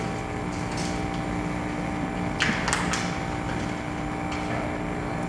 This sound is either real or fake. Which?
real